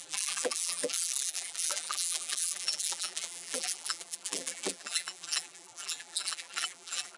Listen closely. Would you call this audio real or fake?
fake